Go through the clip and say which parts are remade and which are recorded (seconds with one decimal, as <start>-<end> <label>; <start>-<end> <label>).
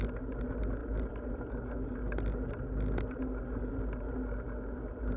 0.0-5.2 recorded